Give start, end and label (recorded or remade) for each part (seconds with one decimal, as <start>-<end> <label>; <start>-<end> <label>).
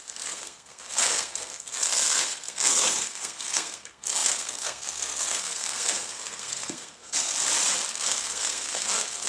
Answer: 0.0-7.3 remade; 7.3-7.9 recorded; 7.9-9.3 remade